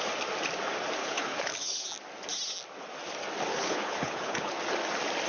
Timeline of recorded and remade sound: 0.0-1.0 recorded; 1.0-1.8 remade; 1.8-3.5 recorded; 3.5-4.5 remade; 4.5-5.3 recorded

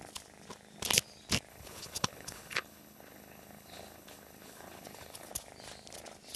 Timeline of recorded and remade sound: 0.0-1.5 recorded; 1.5-5.3 remade; 5.3-6.4 recorded